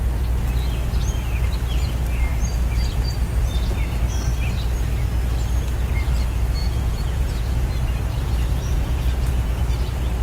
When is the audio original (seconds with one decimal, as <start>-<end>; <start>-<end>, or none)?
0.0-6.6; 7.7-8.7; 9.6-10.2